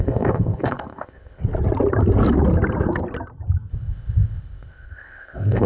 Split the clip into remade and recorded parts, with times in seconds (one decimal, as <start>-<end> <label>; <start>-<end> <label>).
0.0-1.4 remade; 1.4-3.7 recorded; 3.7-5.7 remade